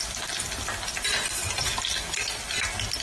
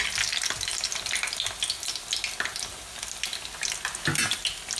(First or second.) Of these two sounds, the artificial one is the first